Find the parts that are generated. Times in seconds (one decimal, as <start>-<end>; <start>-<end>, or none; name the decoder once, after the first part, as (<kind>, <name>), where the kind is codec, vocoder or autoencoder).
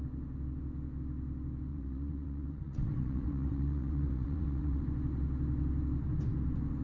1.7-4.8 (vocoder, WaveNeXt)